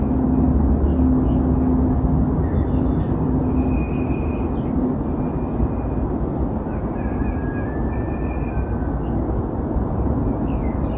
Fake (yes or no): no